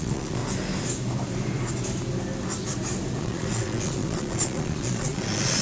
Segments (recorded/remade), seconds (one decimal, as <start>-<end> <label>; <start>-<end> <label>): 0.0-0.4 remade; 0.4-3.2 recorded; 3.2-5.6 remade